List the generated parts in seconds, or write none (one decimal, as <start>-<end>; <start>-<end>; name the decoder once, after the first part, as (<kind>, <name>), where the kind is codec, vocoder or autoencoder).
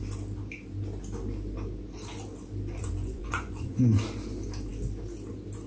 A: 2.8-3.9 (vocoder, Vocos)